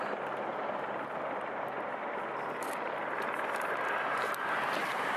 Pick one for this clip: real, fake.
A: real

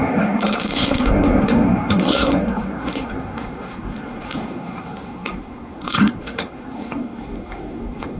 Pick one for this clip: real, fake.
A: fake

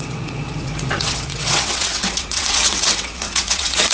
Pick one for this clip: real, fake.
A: fake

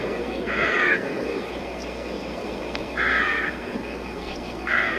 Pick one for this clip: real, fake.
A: fake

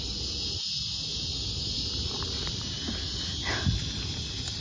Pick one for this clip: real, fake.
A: real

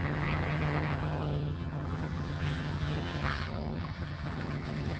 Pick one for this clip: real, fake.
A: fake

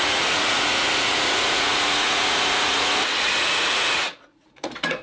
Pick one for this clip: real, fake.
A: fake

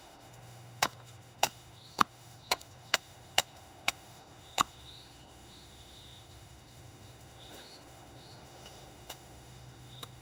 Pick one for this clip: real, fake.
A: fake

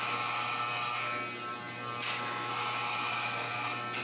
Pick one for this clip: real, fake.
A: real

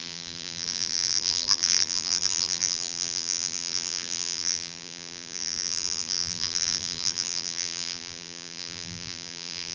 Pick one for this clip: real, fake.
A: fake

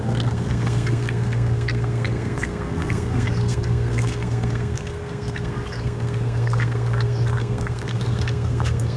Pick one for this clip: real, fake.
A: fake